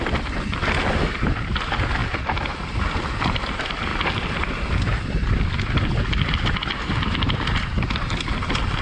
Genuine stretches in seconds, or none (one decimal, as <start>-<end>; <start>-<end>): 0.0-8.8